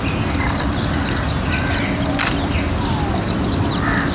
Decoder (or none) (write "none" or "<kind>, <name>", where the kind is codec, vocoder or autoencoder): none